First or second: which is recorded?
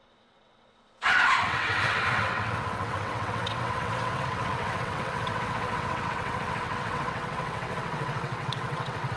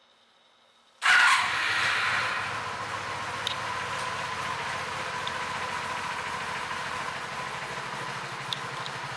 second